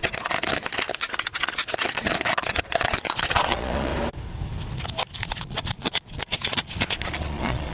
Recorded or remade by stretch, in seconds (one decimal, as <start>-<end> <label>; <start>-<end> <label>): 0.0-1.1 recorded; 1.1-3.9 remade; 3.9-5.2 recorded; 5.2-7.7 remade